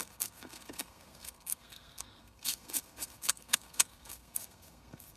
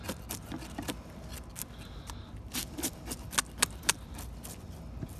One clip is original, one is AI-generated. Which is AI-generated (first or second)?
first